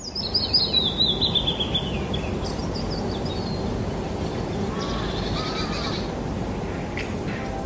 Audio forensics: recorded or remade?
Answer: recorded